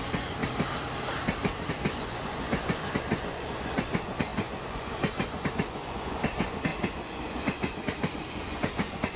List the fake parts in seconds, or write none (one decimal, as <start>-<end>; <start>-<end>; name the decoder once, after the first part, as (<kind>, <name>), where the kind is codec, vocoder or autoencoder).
0.0-0.4 (vocoder, Vocos); 1.7-9.2